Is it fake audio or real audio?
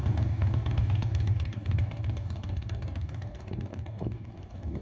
fake